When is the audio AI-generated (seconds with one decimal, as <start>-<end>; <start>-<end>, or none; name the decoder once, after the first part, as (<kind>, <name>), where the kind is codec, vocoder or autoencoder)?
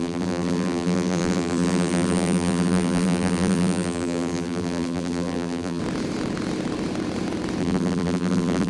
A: 0.0-5.8 (vocoder, BigVGAN v2); 7.6-8.7